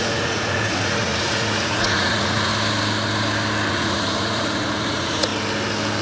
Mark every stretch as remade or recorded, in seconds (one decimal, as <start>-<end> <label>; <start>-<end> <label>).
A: 0.0-2.5 remade; 2.5-3.7 recorded; 3.7-5.3 remade; 5.3-6.0 recorded